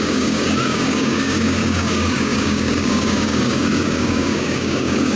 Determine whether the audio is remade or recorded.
remade